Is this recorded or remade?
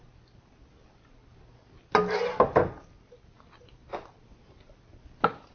recorded